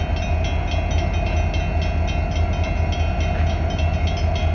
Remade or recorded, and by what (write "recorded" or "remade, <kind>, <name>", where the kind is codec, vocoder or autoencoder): recorded